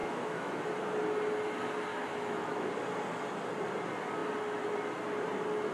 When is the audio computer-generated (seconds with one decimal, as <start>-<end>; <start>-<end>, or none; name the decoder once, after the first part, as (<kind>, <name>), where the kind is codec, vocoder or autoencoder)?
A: 0.0-0.8 (autoencoder, DAC-VAE); 1.9-2.7